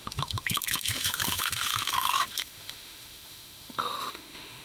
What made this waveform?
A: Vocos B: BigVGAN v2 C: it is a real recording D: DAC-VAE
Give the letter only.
D